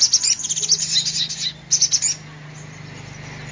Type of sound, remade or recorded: recorded